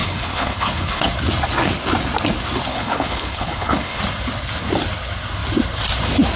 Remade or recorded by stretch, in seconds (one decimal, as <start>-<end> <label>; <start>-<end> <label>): 0.0-1.1 remade; 1.1-2.7 recorded; 2.7-4.0 remade; 4.0-6.4 recorded